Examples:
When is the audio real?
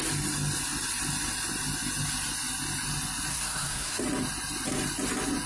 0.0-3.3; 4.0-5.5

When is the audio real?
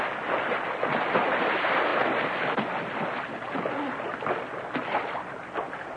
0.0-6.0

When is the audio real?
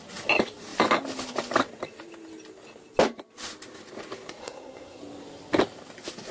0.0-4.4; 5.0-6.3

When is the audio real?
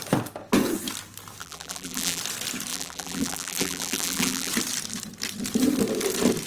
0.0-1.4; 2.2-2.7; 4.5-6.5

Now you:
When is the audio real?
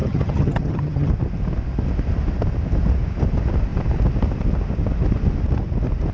1.1-6.1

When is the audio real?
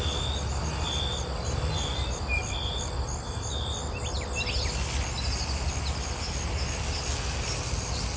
0.0-8.2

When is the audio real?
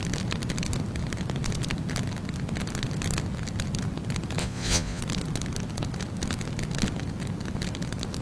0.0-4.4; 5.0-8.2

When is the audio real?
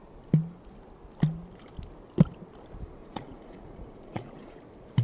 0.0-3.0; 4.6-5.0